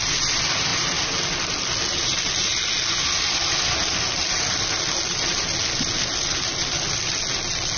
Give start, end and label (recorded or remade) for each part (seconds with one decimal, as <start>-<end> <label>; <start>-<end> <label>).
0.0-7.8 recorded